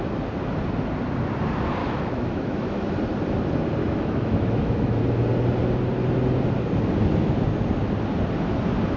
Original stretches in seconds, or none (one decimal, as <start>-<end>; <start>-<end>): 0.0-1.8; 2.8-3.8; 5.0-9.0

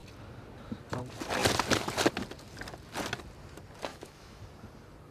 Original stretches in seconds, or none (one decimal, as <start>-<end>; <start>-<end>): 0.0-3.9; 4.4-5.1

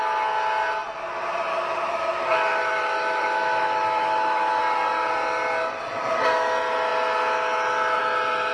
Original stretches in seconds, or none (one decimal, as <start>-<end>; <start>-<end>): 0.0-1.5; 4.6-8.5

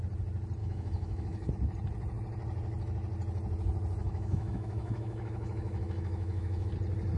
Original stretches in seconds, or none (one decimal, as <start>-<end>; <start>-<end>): 0.0-0.6; 1.5-4.0; 6.7-7.2

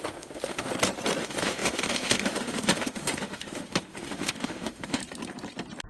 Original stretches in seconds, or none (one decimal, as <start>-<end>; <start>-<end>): 0.7-1.2; 5.0-5.9

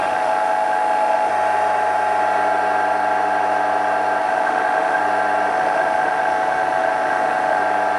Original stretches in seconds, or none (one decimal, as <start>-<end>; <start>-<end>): 1.3-4.2; 5.0-5.5; 7.6-8.0

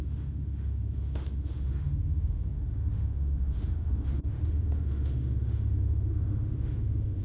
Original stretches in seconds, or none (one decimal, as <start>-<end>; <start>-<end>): none